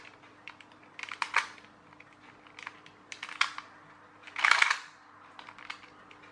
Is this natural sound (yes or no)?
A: yes